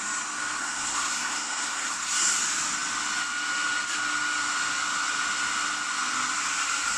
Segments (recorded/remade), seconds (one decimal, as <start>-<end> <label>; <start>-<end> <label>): 0.0-0.6 recorded; 0.6-2.4 remade; 2.4-7.0 recorded